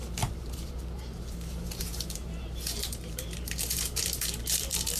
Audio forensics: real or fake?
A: fake